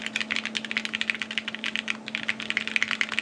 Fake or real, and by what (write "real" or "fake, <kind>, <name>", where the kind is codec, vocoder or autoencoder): real